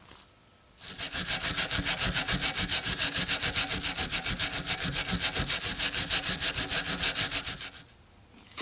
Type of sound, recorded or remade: recorded